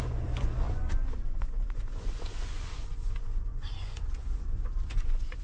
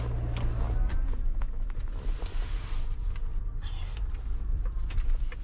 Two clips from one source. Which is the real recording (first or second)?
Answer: second